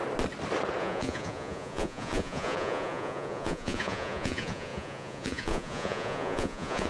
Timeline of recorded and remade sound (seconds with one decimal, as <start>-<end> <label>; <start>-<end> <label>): 0.0-0.8 recorded; 0.8-6.9 remade

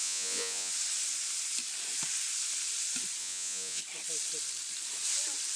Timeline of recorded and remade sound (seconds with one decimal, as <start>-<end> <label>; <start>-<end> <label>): 0.0-0.7 remade; 0.7-3.2 recorded; 3.2-3.8 remade; 3.8-5.6 recorded

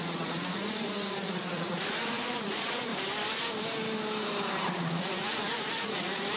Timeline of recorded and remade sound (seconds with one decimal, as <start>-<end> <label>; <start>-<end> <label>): 0.0-2.9 remade; 2.9-4.7 recorded; 4.7-6.4 remade

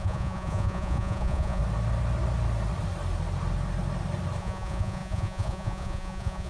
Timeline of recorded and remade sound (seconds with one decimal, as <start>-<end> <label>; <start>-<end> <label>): 0.0-1.6 remade; 1.6-4.4 recorded; 4.4-6.5 remade

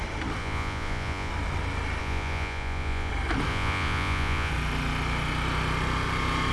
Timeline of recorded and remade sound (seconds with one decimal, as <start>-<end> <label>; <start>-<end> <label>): 0.0-0.4 recorded; 0.4-1.3 remade; 1.3-2.0 recorded; 2.0-3.1 remade; 3.1-3.5 recorded; 3.5-4.5 remade; 4.5-6.5 recorded

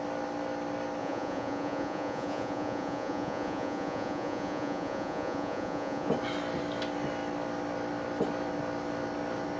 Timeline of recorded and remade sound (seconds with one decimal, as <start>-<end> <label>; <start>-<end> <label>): 0.0-1.0 recorded; 1.0-6.1 remade; 6.1-9.6 recorded

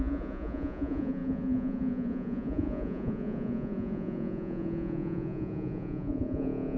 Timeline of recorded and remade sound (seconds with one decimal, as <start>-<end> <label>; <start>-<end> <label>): 0.0-6.8 remade

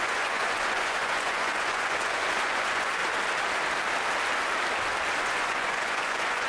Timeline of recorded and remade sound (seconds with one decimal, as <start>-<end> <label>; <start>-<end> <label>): 0.0-3.0 remade; 3.0-5.2 recorded; 5.2-6.5 remade